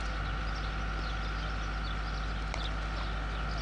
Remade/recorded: recorded